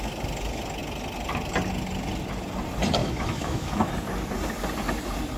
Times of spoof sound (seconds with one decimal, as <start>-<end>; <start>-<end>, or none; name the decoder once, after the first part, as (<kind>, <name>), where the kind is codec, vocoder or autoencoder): 3.0-3.9 (autoencoder, DAC-VAE)